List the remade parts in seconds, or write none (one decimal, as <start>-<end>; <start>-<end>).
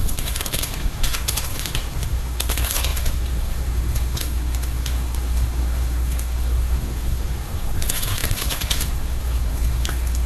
0.0-10.3